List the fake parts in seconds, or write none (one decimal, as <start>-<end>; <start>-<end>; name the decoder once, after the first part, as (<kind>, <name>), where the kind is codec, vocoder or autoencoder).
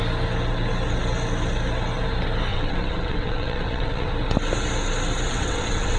2.5-4.1 (vocoder, WaveNeXt); 5.3-6.0